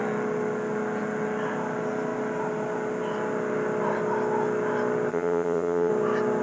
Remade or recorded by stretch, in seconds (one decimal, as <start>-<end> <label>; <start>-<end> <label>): 0.0-5.1 recorded; 5.1-5.9 remade; 5.9-6.4 recorded